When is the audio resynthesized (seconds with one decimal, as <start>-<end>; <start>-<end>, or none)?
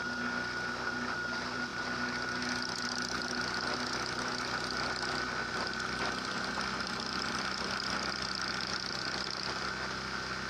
none